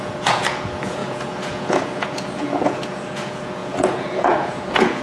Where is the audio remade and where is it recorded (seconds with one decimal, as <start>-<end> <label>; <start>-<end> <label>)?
0.0-5.0 remade